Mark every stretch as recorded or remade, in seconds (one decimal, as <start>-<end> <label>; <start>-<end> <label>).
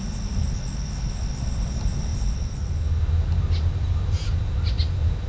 0.0-5.3 recorded